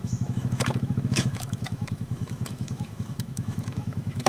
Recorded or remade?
remade